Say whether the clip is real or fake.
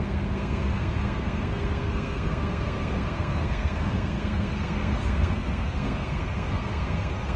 fake